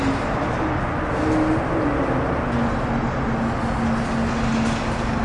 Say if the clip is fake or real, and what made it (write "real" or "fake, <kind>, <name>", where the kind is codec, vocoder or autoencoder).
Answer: real